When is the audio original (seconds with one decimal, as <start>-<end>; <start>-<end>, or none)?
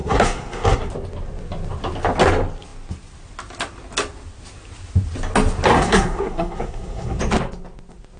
0.9-5.7; 7.2-8.2